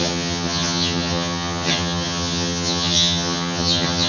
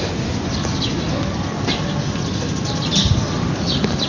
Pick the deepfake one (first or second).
first